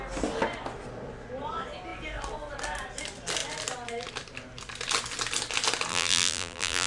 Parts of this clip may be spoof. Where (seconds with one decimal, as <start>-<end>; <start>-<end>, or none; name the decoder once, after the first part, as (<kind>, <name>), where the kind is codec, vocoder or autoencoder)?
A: 5.9-6.9 (vocoder, BigVGAN v2)